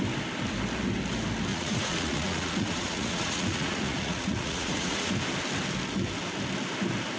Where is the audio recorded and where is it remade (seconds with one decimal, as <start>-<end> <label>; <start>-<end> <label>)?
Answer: 0.0-1.5 recorded; 1.5-5.1 remade; 5.1-7.2 recorded